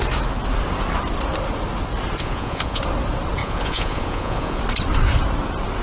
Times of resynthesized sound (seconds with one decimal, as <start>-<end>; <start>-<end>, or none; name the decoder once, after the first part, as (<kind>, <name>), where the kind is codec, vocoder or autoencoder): 2.2-2.8 (vocoder, Vocos); 3.4-4.6